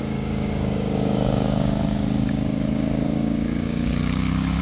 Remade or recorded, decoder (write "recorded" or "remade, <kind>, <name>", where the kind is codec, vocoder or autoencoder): remade, codec, DAC